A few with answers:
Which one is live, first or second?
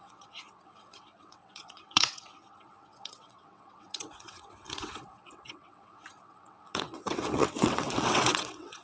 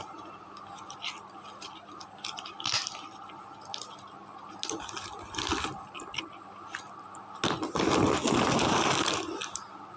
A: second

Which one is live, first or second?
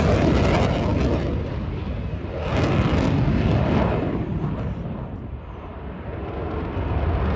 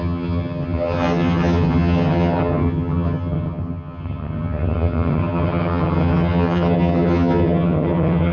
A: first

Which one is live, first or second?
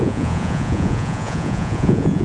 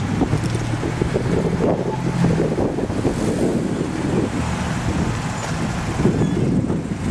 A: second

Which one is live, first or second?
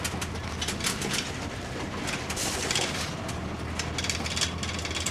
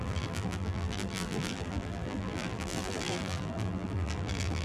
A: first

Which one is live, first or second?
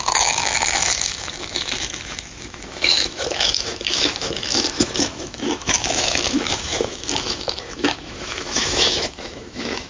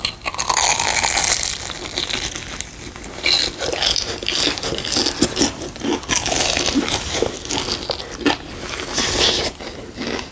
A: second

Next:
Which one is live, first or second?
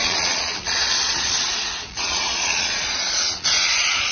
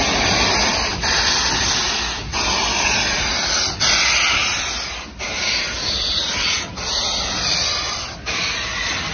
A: second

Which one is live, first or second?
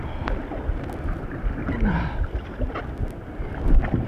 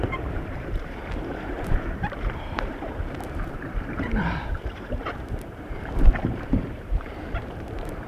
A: first